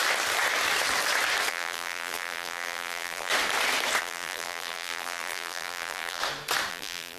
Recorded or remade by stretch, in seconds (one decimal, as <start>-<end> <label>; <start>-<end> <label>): 0.0-1.5 recorded; 1.5-3.3 remade; 3.3-4.0 recorded; 4.0-6.2 remade; 6.2-6.7 recorded; 6.7-7.2 remade